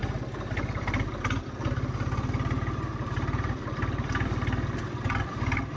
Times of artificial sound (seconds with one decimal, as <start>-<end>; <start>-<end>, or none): 0.0-5.8